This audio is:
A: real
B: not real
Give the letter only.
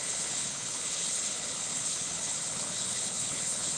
B